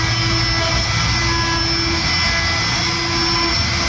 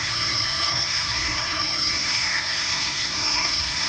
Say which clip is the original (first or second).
first